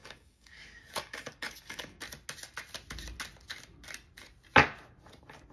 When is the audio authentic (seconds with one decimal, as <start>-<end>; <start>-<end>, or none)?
2.0-5.5